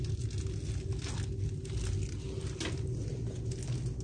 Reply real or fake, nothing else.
real